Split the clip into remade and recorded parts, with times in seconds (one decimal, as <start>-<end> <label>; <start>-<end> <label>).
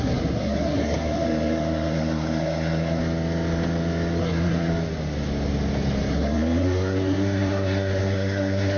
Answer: 0.0-3.0 remade; 3.0-4.2 recorded; 4.2-4.7 remade; 4.7-6.1 recorded; 6.1-8.8 remade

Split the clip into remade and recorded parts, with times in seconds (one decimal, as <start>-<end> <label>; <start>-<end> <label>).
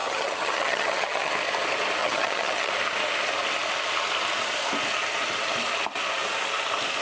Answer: 0.0-1.3 remade; 1.3-2.0 recorded; 2.0-2.7 remade; 2.7-7.0 recorded